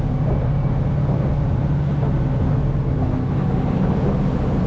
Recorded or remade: recorded